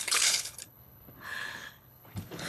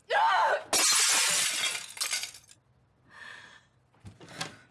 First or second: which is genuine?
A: second